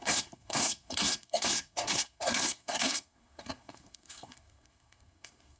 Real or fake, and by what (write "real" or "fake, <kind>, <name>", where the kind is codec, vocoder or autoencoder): fake, codec, SNAC